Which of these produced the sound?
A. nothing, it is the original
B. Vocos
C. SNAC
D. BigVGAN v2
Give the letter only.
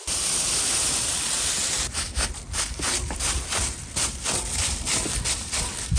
D